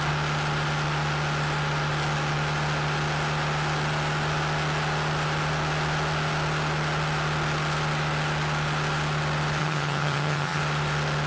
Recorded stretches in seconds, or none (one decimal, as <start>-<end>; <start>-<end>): 0.0-9.6; 10.6-11.3